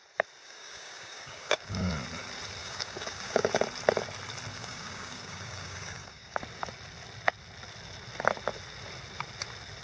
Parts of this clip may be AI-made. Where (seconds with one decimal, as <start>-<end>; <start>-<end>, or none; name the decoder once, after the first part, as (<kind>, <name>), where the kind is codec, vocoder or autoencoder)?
0.4-1.9 (codec, DAC); 2.6-3.5; 4.5-6.4

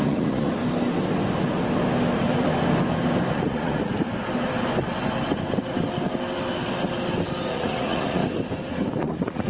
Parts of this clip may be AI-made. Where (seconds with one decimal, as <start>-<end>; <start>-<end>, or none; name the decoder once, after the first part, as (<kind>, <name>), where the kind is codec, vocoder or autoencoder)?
0.0-0.6 (vocoder, Vocos); 3.3-3.9; 7.5-8.2; 9.0-9.5